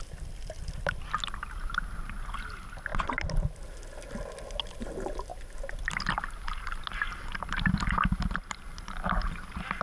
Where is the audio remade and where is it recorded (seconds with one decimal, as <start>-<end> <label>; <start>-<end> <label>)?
0.0-9.8 recorded